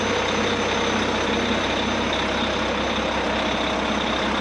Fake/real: real